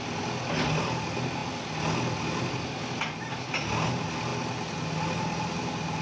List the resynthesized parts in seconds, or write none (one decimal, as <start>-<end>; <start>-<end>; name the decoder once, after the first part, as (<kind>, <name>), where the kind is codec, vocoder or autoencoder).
none